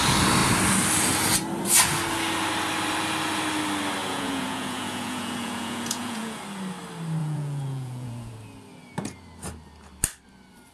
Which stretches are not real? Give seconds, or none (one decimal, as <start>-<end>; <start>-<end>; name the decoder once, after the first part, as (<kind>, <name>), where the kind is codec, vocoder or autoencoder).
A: 4.0-6.4 (vocoder, Vocos); 7.2-8.3